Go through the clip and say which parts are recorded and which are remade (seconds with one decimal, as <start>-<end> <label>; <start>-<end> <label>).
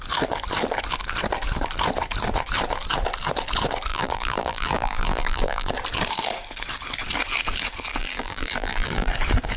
0.0-3.9 recorded; 3.9-5.7 remade; 5.7-8.0 recorded; 8.0-9.1 remade; 9.1-9.6 recorded